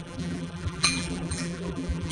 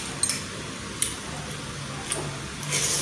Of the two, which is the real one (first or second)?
second